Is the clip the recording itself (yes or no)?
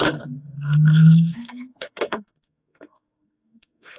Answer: no